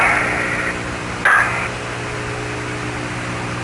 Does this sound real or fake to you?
real